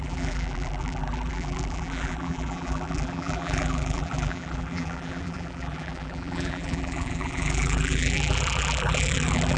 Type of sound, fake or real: fake